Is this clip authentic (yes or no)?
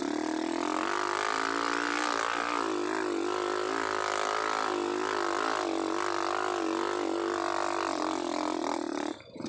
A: yes